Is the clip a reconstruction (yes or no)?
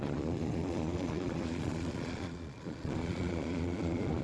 yes